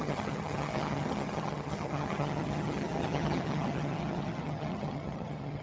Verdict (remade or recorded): remade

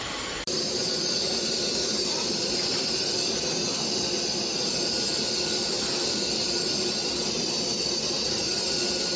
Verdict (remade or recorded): recorded